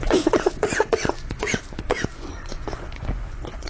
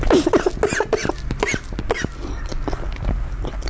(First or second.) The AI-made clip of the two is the first